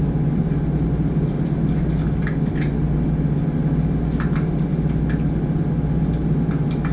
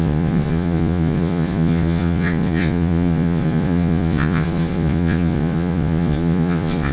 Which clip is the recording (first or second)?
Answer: first